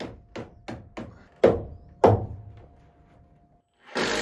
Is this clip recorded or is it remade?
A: recorded